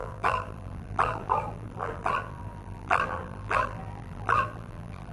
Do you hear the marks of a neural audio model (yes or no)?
yes